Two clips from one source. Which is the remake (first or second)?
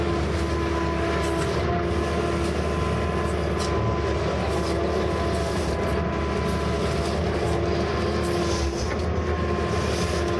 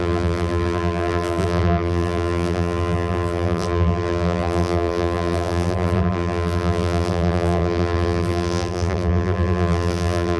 second